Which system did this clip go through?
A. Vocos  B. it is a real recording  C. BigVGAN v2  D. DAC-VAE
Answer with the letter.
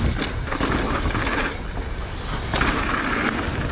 B